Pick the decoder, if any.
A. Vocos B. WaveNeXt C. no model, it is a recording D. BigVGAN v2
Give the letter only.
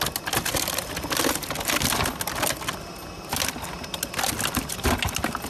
C